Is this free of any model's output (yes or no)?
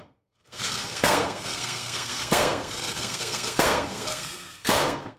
no